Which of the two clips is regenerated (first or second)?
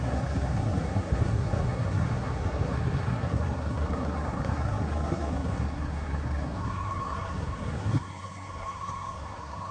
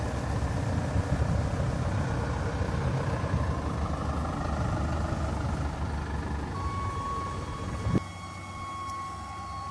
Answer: first